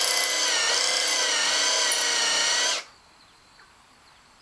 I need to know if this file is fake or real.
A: real